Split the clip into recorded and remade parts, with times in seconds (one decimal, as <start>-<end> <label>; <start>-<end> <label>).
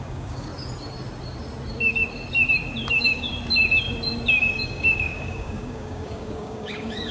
0.0-0.5 remade; 0.5-2.9 recorded; 2.9-3.3 remade; 3.3-4.3 recorded; 4.3-7.1 remade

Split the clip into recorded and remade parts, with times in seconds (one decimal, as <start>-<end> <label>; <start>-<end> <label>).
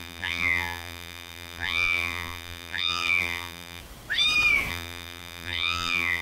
0.0-3.8 remade; 3.8-4.7 recorded; 4.7-6.2 remade